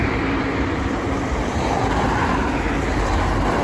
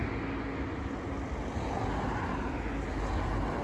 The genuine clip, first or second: second